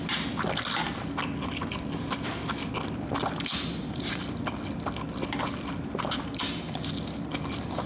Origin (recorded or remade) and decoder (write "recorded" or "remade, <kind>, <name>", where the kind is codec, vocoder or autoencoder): recorded